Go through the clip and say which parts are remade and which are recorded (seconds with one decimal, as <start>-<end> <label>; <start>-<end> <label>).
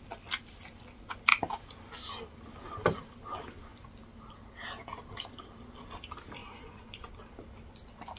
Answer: 0.0-6.4 recorded; 6.4-7.1 remade; 7.1-8.2 recorded